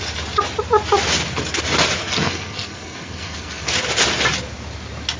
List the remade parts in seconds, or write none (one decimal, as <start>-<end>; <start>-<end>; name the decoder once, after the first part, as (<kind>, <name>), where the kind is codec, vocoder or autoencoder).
2.0-3.7 (codec, SNAC)